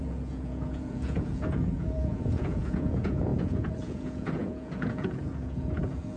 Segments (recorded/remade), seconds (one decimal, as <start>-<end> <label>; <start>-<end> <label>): 0.0-6.2 remade